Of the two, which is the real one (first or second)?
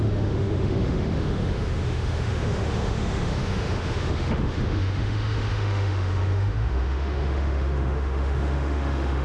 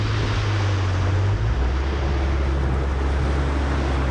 second